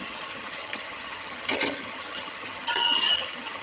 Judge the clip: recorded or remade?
remade